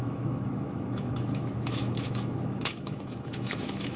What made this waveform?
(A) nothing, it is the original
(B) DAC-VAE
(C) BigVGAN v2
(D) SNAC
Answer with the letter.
B